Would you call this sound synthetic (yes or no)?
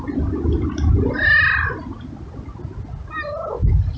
no